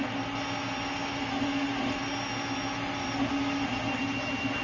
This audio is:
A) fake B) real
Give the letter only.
B